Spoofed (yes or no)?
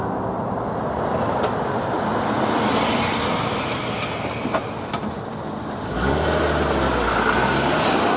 no